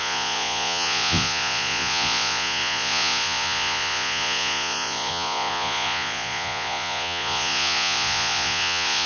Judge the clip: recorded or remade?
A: remade